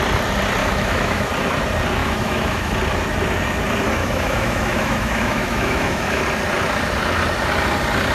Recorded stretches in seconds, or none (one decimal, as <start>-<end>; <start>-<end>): 0.0-0.6; 1.3-2.0; 2.7-4.0; 6.2-8.1

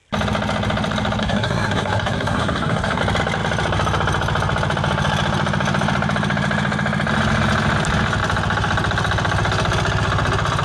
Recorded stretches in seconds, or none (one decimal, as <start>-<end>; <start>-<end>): 0.0-1.2; 3.0-10.6

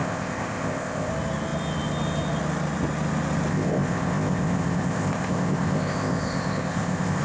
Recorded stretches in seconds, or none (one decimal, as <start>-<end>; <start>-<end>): 1.1-3.5

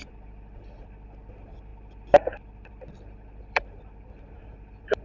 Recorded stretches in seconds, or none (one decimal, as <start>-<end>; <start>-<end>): none

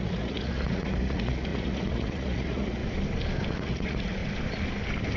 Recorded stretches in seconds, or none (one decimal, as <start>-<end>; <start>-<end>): 2.8-3.5; 4.2-5.2

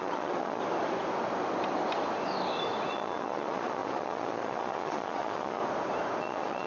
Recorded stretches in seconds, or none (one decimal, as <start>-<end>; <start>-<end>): 0.6-2.9; 5.6-6.2